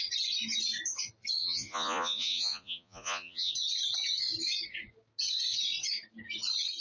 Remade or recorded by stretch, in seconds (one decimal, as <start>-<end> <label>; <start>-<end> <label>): 0.0-1.4 recorded; 1.4-3.5 remade; 3.5-6.8 recorded